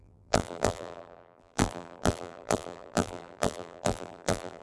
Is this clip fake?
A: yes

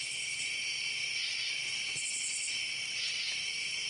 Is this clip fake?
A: no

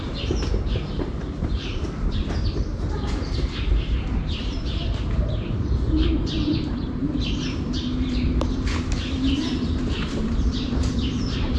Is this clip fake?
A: yes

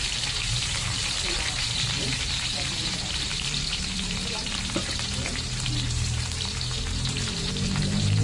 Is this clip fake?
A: yes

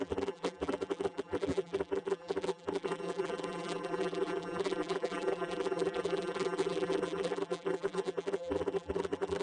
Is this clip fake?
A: yes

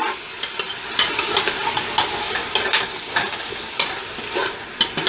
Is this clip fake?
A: no